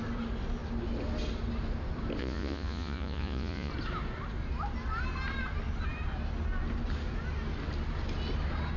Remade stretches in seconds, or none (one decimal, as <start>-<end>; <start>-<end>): 2.2-3.7